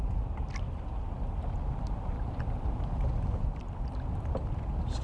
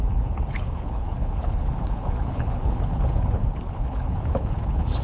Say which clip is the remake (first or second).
second